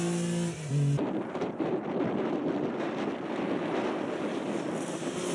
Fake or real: real